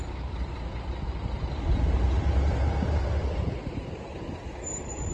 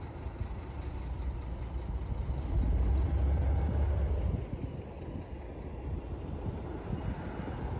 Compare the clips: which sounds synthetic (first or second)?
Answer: first